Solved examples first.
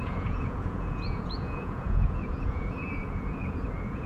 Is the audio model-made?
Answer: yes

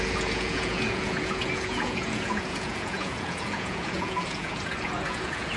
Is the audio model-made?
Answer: yes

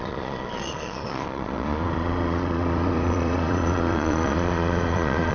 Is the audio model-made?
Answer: yes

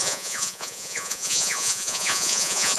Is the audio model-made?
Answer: yes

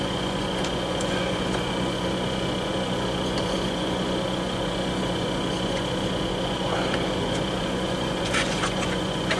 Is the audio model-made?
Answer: yes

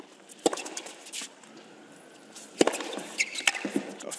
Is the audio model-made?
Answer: no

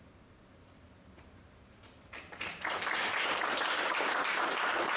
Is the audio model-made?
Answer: no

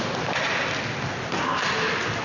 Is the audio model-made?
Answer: no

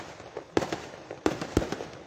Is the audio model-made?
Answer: no